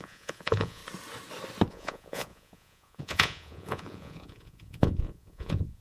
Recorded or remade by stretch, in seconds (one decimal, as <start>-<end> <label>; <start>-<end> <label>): 0.0-0.8 remade; 0.8-1.7 recorded; 1.7-5.8 remade